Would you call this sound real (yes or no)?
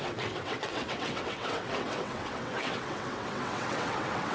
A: no